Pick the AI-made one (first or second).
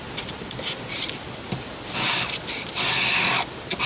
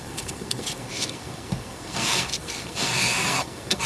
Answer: second